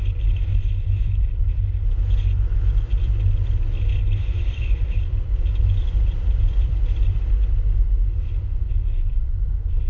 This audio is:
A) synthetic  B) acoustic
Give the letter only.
A